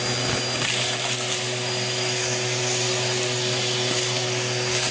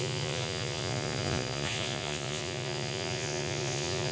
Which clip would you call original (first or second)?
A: first